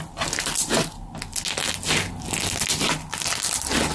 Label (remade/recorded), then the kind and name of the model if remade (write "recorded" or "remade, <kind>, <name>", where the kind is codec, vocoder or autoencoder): recorded